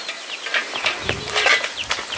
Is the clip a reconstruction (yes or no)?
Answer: no